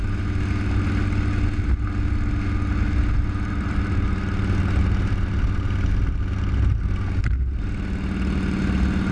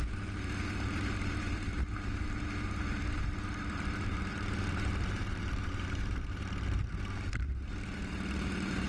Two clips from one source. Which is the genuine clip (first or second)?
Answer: first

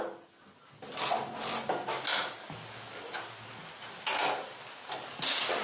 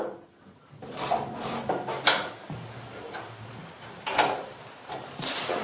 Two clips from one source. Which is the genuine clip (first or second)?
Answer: first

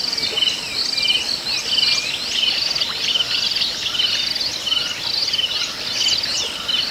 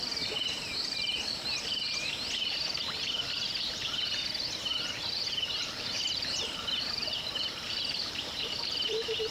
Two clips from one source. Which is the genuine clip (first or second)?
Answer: first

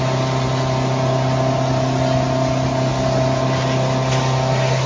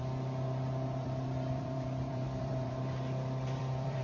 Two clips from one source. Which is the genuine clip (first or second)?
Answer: first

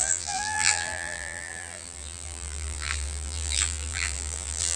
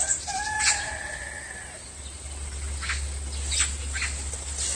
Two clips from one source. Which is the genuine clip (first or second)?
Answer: second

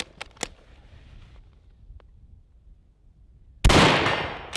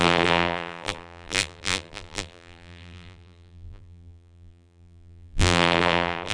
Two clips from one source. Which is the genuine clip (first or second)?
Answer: first